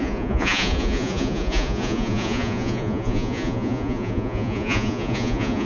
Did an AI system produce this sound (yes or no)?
yes